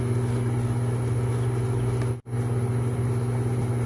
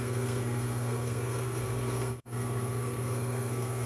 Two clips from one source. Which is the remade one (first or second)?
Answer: second